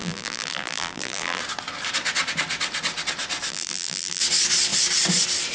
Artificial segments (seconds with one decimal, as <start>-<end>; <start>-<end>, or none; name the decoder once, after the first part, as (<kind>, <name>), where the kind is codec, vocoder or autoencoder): 0.0-1.4 (vocoder, BigVGAN v2); 3.5-4.2